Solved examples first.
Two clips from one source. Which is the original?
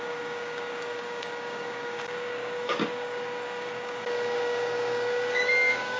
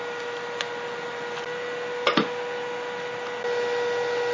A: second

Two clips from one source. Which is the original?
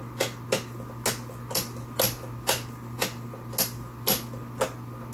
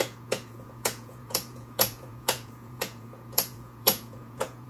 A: first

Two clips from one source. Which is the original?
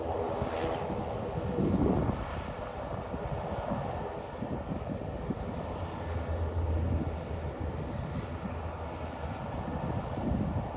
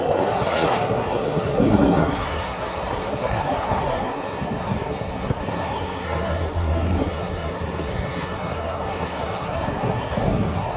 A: first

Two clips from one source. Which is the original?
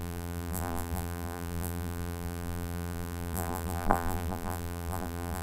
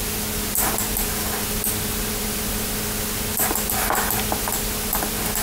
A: second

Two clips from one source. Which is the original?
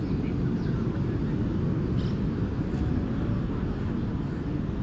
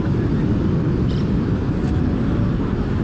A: first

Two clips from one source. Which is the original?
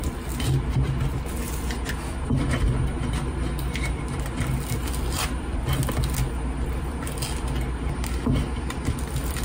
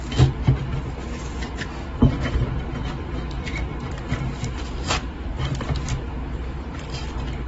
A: first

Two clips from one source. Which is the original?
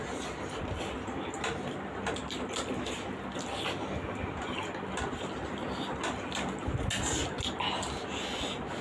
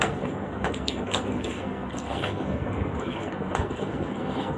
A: first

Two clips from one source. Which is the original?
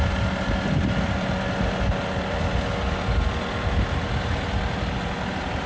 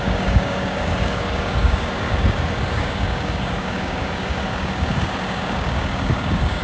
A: first